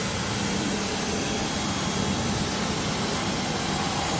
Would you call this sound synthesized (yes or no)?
no